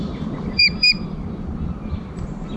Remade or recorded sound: remade